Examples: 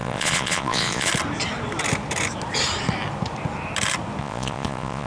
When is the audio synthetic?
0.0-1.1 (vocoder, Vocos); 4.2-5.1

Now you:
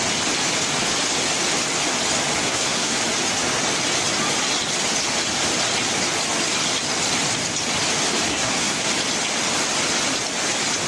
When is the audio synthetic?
2.4-3.0 (codec, SNAC); 8.3-8.9

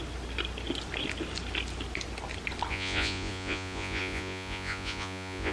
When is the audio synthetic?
2.7-5.5 (vocoder, Vocos)

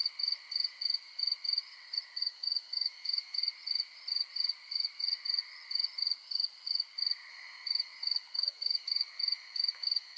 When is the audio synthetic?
2.2-3.4 (autoencoder, DAC-VAE); 7.3-7.9; 8.5-10.2

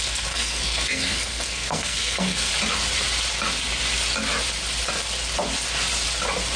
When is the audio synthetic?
0.0-2.5 (codec, SNAC)

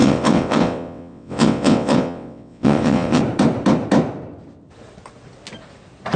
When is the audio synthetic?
0.0-3.2 (vocoder, WaveNeXt)

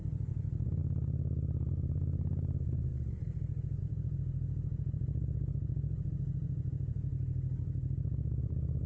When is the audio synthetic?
0.0-0.8 (vocoder, Vocos); 1.7-2.9; 3.8-7.1; 8.4-8.9